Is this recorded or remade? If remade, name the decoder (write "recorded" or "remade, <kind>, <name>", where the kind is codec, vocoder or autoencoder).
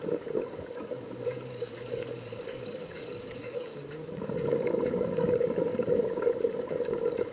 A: remade, codec, DAC